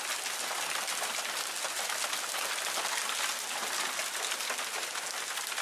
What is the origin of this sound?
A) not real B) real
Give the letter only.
B